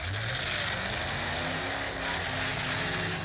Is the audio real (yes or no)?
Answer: yes